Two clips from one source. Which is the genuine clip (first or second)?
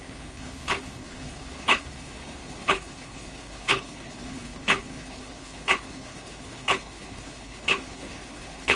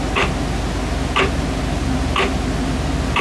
second